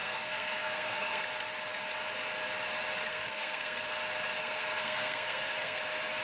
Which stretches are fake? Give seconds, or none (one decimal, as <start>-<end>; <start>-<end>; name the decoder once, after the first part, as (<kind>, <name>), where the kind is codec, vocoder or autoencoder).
0.0-1.2 (codec, SNAC); 3.1-3.9; 4.4-5.8